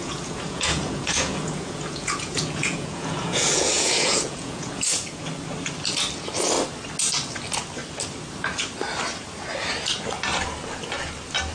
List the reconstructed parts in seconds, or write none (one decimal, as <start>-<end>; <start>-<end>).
0.0-5.2

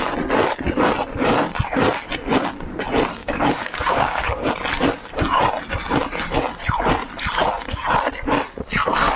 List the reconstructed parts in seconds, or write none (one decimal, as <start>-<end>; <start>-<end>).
3.2-4.5

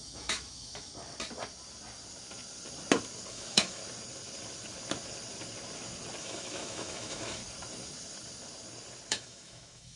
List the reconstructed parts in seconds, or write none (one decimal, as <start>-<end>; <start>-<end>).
0.0-0.9; 3.3-3.8; 6.2-7.4; 9.1-10.0

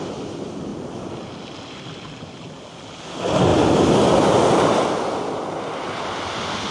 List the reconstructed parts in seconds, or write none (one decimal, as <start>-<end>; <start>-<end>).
none

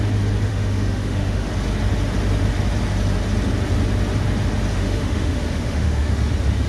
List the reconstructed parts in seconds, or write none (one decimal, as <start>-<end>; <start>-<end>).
0.5-1.5; 4.7-6.3

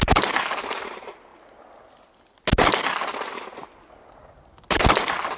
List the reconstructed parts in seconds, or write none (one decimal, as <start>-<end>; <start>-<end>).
none